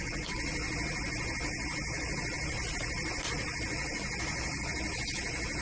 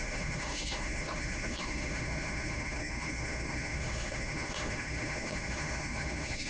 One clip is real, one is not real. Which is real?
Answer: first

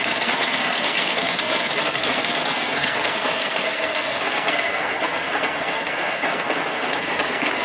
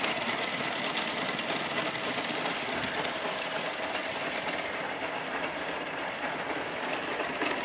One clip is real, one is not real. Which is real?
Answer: second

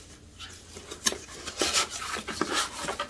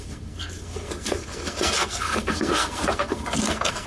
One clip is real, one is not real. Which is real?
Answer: first